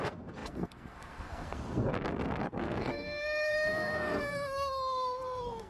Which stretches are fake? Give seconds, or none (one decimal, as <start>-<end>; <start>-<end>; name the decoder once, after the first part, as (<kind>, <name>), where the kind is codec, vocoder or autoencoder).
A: 0.0-5.7 (codec, SNAC)